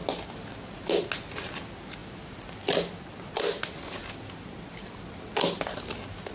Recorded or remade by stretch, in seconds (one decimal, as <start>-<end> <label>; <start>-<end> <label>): 0.0-6.3 recorded

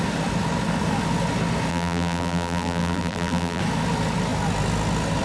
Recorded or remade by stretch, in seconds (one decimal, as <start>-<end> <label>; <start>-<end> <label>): 0.0-1.7 recorded; 1.7-3.6 remade; 3.6-5.2 recorded

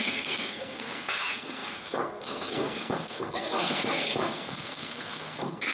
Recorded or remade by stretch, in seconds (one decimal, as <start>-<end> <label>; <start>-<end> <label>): 0.0-5.7 remade

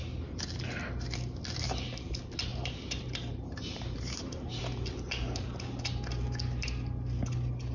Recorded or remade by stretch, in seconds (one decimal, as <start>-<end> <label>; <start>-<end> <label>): 0.0-2.5 recorded; 2.5-4.6 remade; 4.6-7.7 recorded

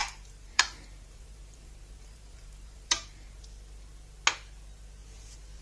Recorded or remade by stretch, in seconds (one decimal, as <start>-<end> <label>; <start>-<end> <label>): 0.0-3.4 remade; 3.4-5.6 recorded

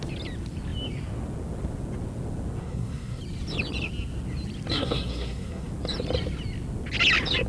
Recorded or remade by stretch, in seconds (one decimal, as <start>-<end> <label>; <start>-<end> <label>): 0.0-2.6 recorded; 2.6-3.2 remade; 3.2-4.7 recorded; 4.7-5.7 remade; 5.7-7.5 recorded

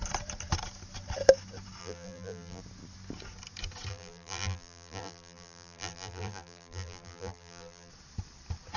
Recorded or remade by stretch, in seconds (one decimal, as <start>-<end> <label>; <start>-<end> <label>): 0.0-1.8 recorded; 1.8-2.6 remade; 2.6-3.9 recorded; 3.9-7.9 remade; 7.9-8.8 recorded

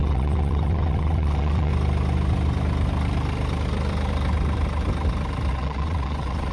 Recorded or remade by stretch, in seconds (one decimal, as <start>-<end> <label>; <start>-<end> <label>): 0.0-1.7 remade; 1.7-5.5 recorded; 5.5-6.5 remade